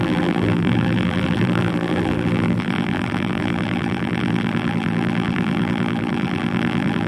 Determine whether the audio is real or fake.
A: fake